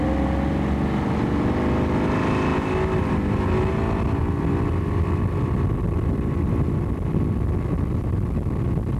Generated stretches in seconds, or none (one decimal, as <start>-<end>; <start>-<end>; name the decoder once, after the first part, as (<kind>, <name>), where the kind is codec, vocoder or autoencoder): none